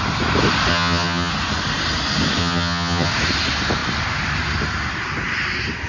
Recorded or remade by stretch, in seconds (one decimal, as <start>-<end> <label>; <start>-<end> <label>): 0.0-0.7 recorded; 0.7-1.3 remade; 1.3-2.4 recorded; 2.4-3.1 remade; 3.1-5.9 recorded